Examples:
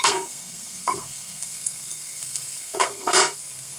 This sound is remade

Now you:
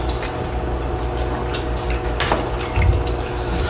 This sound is recorded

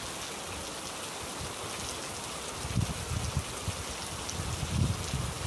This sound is recorded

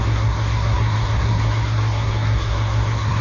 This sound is remade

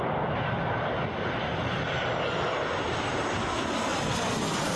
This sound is recorded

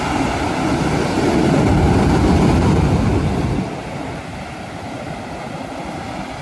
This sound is recorded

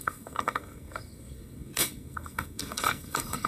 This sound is remade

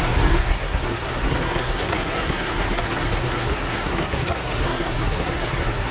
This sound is remade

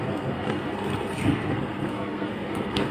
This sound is remade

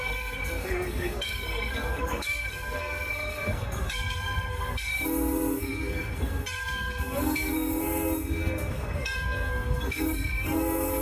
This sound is remade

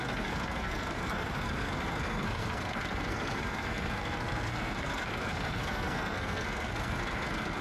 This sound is remade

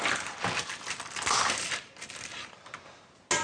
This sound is recorded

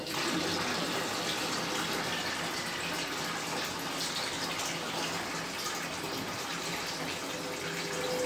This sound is recorded